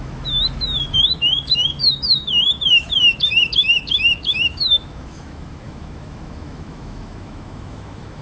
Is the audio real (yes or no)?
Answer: no